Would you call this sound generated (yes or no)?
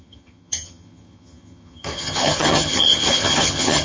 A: yes